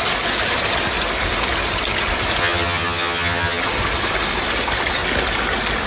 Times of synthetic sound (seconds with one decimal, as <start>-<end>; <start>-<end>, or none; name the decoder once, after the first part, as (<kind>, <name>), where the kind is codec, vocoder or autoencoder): 2.4-3.6 (vocoder, HiFi-GAN)